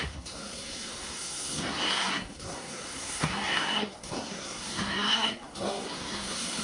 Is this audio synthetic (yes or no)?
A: yes